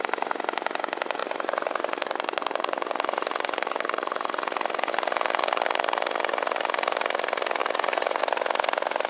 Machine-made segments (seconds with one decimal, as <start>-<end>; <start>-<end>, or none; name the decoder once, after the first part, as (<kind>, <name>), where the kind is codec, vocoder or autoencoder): 1.2-4.9 (vocoder, BigVGAN v2); 7.6-8.2